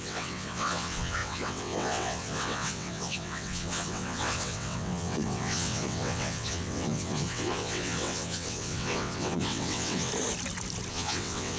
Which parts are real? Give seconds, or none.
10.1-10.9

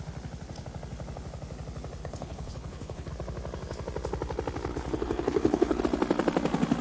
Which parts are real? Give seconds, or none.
0.0-2.0; 3.1-4.7; 5.8-6.8

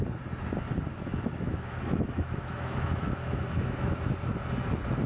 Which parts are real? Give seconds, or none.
0.0-0.9; 4.0-5.1

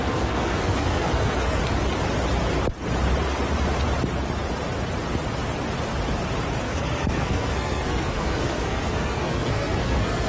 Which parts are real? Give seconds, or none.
1.6-6.6

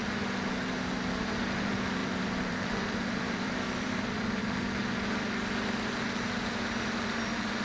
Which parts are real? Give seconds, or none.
0.0-2.0; 4.4-7.6

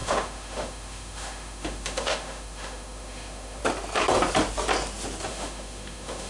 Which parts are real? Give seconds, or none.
3.6-5.3

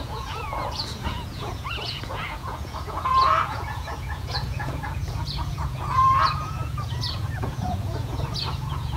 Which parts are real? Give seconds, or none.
none

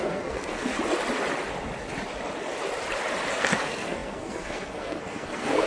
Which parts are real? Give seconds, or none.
0.7-3.3